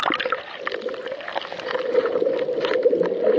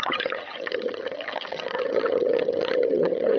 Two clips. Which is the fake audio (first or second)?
second